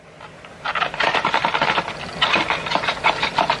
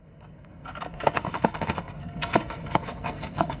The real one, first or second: first